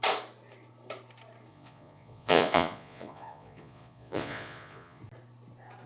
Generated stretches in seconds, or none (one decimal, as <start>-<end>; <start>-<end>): 1.5-5.0